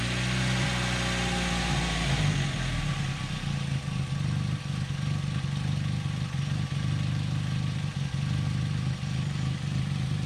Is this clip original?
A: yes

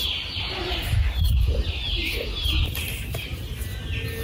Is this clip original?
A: yes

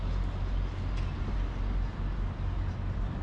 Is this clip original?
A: yes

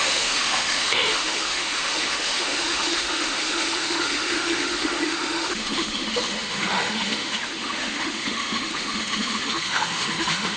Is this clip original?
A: no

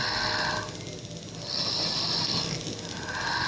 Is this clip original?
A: yes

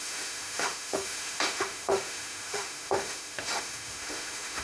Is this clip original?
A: no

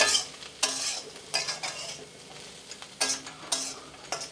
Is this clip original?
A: yes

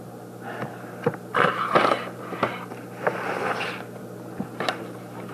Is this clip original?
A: yes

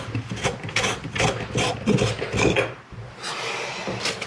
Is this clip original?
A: yes